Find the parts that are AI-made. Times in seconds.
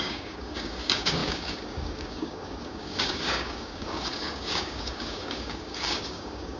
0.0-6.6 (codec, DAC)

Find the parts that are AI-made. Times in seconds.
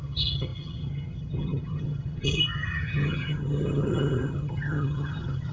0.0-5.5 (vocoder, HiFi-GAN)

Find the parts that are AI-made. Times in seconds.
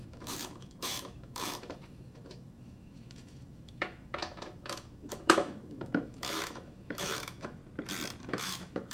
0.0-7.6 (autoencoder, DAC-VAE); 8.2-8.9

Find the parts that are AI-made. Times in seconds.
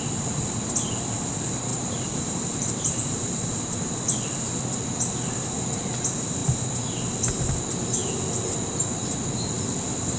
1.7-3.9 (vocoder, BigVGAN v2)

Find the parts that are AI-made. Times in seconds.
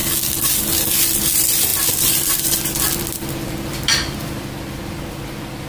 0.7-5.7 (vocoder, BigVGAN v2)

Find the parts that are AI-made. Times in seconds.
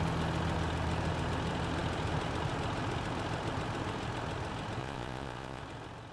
4.8-5.6 (vocoder, Vocos)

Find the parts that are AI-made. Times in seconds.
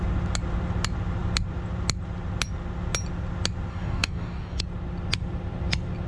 3.7-4.6 (codec, DAC)